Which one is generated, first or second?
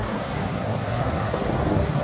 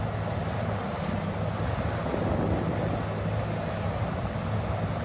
first